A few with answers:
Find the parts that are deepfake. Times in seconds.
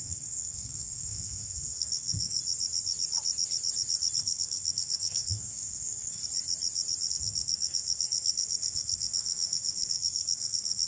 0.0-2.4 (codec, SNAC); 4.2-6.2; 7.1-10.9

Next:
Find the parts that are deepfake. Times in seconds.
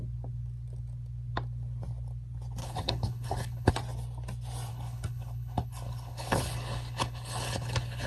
2.6-3.7 (codec, HILCodec); 4.7-8.1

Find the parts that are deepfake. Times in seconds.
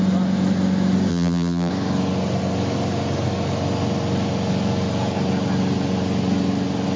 1.1-1.7 (vocoder, BigVGAN v2)